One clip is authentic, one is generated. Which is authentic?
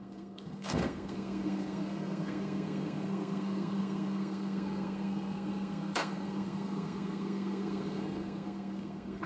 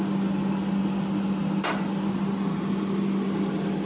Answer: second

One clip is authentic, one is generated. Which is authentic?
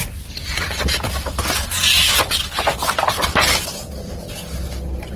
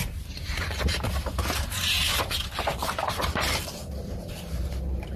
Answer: first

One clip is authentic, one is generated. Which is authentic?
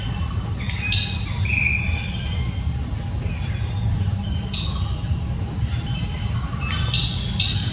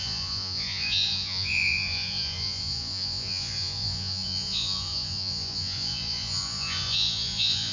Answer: first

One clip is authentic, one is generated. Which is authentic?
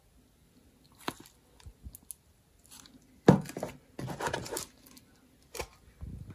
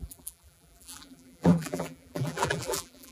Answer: first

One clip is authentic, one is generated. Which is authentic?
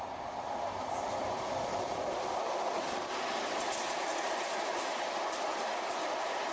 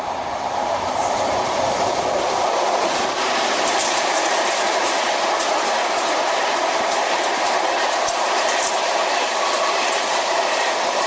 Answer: first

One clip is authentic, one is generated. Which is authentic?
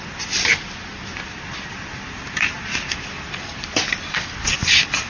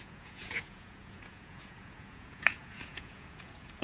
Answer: first